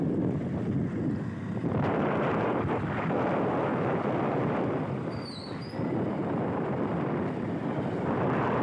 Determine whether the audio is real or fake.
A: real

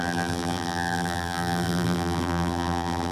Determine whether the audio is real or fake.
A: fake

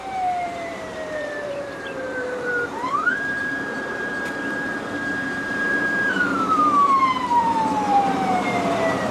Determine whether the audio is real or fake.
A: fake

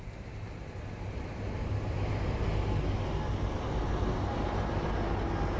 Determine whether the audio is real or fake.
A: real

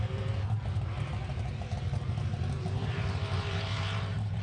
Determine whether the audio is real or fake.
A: fake